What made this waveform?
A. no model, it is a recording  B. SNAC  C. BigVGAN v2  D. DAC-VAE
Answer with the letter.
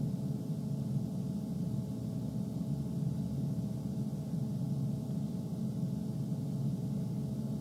A